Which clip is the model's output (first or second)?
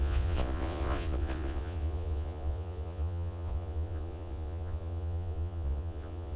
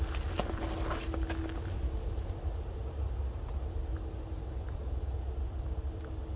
first